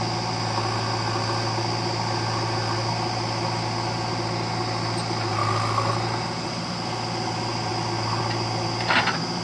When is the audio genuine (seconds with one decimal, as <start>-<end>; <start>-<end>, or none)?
0.0-9.4